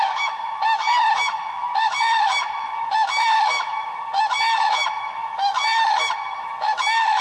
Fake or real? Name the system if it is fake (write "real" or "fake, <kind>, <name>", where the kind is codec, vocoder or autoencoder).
fake, autoencoder, DAC-VAE